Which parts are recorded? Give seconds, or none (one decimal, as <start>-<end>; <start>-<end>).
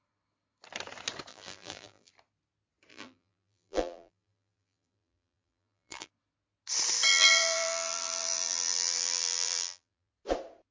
0.0-1.3; 2.1-2.9; 6.1-7.1; 10.1-10.7